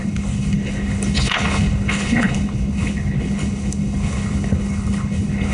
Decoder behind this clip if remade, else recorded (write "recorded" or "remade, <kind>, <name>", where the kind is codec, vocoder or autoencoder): remade, codec, HILCodec